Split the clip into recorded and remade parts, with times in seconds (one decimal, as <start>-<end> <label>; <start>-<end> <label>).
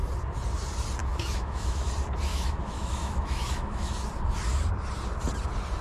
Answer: 0.0-1.0 recorded; 1.0-1.9 remade; 1.9-2.3 recorded; 2.3-3.9 remade; 3.9-5.8 recorded